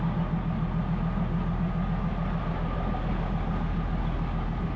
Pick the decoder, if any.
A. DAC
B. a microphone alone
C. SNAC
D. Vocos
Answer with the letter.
B